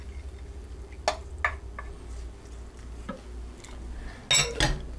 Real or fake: real